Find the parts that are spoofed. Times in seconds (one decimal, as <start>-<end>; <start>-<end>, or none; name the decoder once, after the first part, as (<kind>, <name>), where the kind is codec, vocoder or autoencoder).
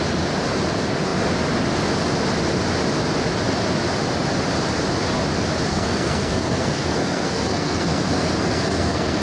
5.7-9.2 (codec, SNAC)